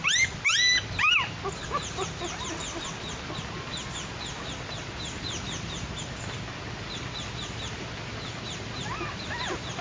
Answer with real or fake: real